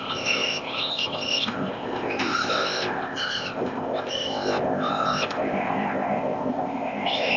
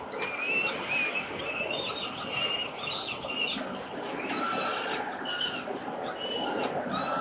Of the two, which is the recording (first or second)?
second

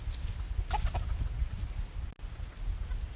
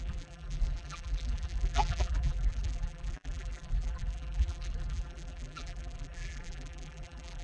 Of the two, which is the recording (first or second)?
first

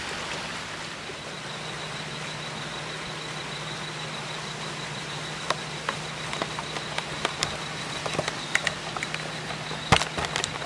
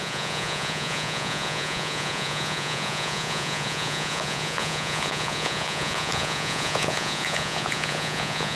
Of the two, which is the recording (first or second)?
first